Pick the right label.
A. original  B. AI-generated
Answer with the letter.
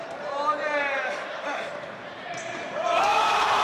B